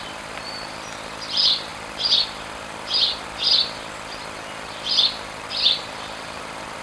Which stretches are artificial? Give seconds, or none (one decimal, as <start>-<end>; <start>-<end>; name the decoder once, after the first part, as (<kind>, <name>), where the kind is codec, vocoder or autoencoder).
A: none